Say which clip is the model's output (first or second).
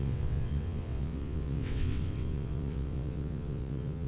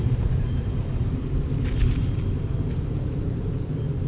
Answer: first